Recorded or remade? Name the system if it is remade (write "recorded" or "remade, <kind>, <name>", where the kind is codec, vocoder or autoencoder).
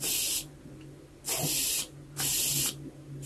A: recorded